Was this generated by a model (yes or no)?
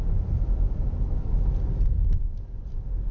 yes